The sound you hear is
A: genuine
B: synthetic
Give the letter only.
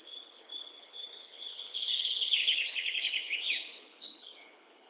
B